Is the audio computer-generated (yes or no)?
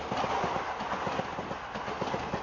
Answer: no